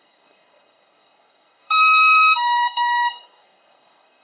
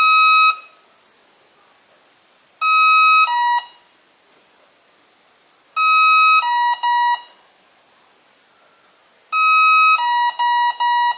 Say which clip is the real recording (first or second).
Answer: second